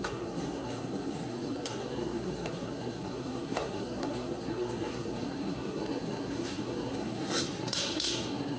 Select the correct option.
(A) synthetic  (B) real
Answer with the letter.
A